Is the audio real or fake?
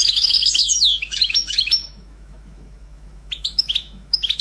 fake